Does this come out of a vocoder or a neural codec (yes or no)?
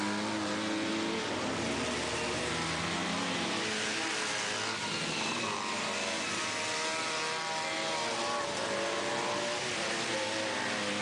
no